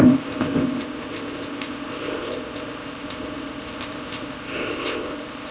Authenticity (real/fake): fake